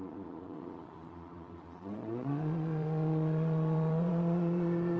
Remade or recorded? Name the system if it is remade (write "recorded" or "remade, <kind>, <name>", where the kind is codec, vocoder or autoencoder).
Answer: remade, vocoder, Vocos